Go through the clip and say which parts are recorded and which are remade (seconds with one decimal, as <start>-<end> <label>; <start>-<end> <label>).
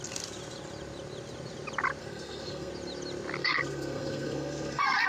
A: 0.0-2.0 recorded; 2.0-2.7 remade; 2.7-3.4 recorded; 3.4-5.1 remade